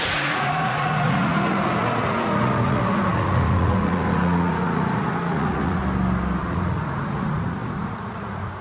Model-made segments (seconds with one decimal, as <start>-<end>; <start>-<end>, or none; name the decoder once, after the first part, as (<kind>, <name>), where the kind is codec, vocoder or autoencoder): 0.0-5.8 (vocoder, Vocos); 6.4-8.6